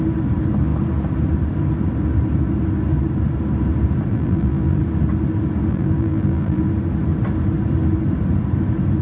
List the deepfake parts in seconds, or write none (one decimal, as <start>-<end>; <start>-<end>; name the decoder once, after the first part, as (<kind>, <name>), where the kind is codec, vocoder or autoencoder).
4.1-4.8 (vocoder, BigVGAN v2); 5.7-6.6